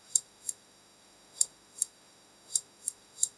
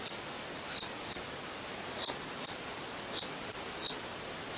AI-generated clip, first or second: first